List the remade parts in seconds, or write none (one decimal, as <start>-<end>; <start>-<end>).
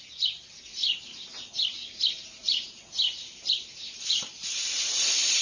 0.8-1.5; 2.4-4.3